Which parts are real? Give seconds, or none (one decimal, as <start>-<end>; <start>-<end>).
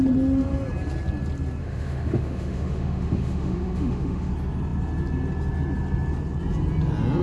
0.0-1.6; 4.3-7.2